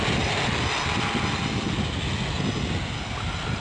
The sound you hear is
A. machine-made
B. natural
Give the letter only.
B